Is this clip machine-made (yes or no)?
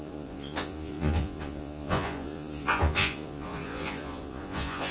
yes